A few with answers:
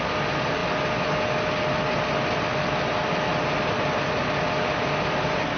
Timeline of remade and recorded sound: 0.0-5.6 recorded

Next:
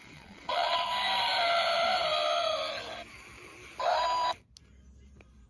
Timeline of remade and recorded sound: 0.0-0.9 remade; 0.9-5.5 recorded

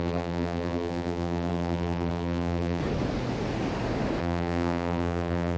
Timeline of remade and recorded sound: 0.0-2.8 remade; 2.8-4.2 recorded; 4.2-5.6 remade

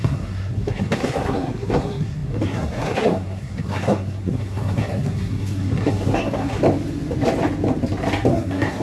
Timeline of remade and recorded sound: 0.0-6.6 remade; 6.6-8.3 recorded; 8.3-8.8 remade

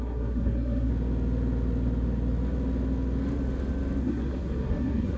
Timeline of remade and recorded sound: 0.0-0.9 remade; 0.9-4.0 recorded; 4.0-5.2 remade

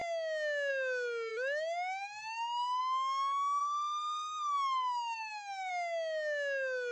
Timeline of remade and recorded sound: 0.0-1.3 recorded; 1.3-2.8 remade; 2.8-3.6 recorded; 3.6-5.7 remade; 5.7-6.9 recorded

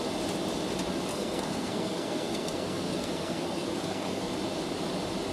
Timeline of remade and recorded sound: 0.0-1.1 recorded; 1.1-4.3 remade; 4.3-5.3 recorded